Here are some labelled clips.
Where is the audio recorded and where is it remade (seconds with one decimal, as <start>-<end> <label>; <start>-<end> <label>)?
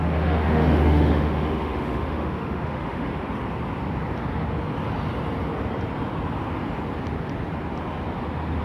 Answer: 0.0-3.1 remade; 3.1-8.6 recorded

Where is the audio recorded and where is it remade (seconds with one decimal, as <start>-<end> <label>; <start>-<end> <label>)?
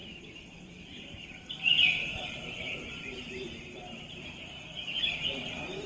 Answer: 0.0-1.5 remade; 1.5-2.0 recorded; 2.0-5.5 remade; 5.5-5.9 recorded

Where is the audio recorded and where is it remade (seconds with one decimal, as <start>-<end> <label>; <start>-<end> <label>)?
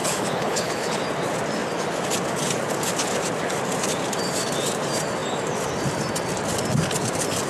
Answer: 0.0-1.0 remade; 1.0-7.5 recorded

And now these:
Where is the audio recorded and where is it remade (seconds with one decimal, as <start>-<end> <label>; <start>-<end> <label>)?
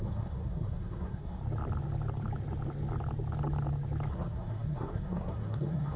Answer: 0.0-1.4 remade; 1.4-4.1 recorded; 4.1-6.0 remade